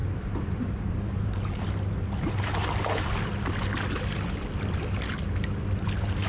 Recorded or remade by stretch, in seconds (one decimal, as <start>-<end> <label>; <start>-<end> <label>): 0.0-1.7 remade; 1.7-6.3 recorded